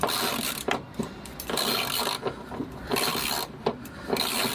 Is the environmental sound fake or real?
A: real